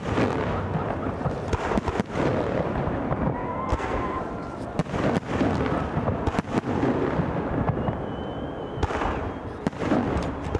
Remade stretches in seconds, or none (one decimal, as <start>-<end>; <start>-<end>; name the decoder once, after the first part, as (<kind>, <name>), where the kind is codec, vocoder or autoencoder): 3.4-4.2 (codec, SNAC)